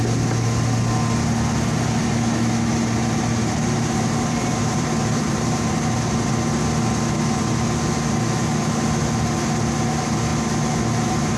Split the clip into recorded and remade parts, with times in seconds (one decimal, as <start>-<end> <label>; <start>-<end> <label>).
0.0-3.0 recorded; 3.0-6.3 remade; 6.3-11.4 recorded